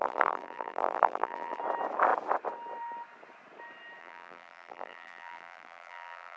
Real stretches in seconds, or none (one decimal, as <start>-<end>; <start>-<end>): 1.6-4.0

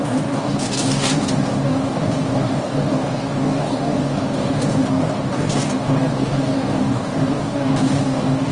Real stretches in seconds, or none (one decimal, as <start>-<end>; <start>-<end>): none

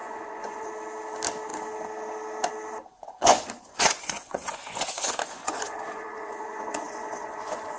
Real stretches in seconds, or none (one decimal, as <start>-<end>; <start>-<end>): 0.7-2.9